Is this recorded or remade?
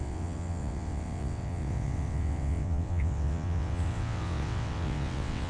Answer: remade